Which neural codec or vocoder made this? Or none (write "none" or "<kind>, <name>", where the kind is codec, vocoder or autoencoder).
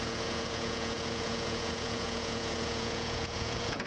vocoder, Vocos